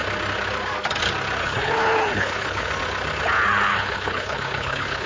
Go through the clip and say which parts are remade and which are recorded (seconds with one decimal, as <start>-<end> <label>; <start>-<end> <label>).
0.0-1.4 recorded; 1.4-2.7 remade; 2.7-3.7 recorded; 3.7-5.1 remade